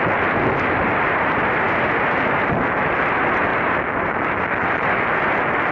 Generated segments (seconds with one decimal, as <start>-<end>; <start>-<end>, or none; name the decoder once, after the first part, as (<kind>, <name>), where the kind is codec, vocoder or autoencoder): 3.5-4.1 (vocoder, BigVGAN v2)